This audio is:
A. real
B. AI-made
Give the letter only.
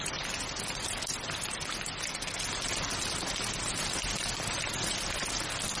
A